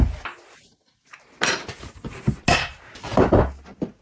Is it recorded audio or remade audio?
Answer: recorded